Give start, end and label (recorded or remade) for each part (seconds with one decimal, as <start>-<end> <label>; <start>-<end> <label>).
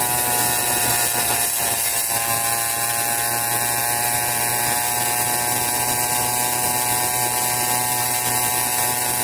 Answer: 0.0-9.2 recorded